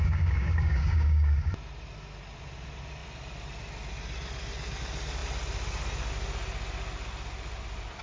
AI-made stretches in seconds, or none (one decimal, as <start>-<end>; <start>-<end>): 0.0-1.5